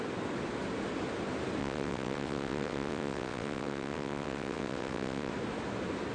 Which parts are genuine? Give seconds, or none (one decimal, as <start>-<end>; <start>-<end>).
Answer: 0.0-1.6; 5.3-6.1